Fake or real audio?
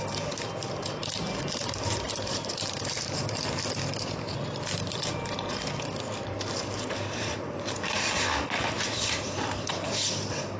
fake